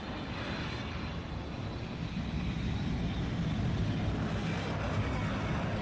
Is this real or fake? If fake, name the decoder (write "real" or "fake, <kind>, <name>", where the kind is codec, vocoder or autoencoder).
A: real